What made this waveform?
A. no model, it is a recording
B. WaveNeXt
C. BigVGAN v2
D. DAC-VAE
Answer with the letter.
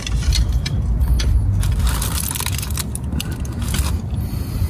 A